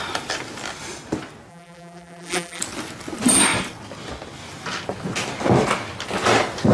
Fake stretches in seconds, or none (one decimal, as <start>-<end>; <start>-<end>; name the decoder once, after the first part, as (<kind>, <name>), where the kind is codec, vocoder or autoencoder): 1.5-2.6 (vocoder, BigVGAN v2)